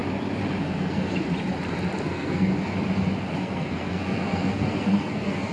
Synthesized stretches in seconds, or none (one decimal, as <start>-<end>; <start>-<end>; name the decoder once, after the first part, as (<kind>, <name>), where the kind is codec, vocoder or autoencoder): 0.6-1.1 (codec, SNAC); 2.0-2.5; 3.3-5.5